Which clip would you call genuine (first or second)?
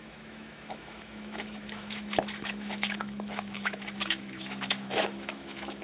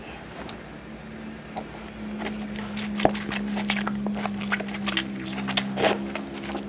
second